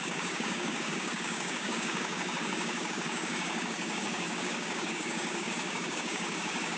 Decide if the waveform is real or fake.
fake